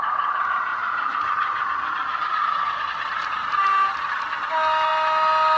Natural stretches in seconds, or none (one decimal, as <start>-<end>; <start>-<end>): 0.0-5.6